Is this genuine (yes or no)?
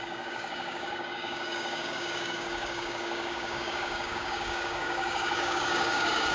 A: no